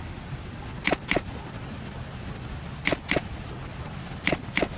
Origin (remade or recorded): recorded